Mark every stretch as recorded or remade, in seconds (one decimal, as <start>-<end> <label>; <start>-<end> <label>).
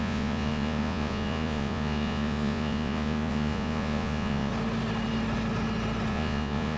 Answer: 0.0-4.5 remade; 4.5-6.1 recorded; 6.1-6.8 remade